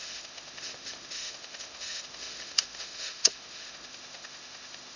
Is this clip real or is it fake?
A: fake